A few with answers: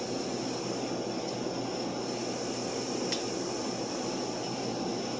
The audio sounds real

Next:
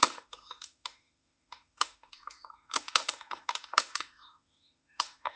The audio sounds fake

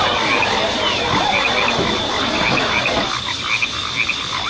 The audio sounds real